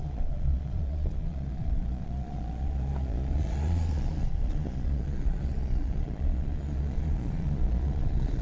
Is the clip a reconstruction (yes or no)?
yes